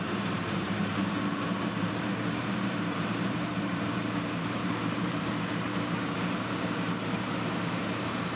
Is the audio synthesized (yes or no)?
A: yes